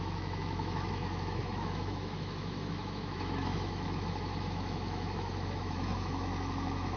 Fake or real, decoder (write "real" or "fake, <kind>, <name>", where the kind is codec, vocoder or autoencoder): fake, autoencoder, DAC-VAE